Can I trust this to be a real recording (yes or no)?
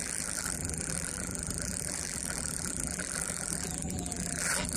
no